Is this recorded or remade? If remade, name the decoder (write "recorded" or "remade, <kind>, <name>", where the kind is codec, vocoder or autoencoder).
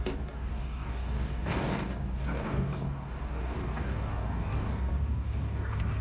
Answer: remade, codec, DAC